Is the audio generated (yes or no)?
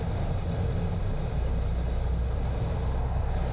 no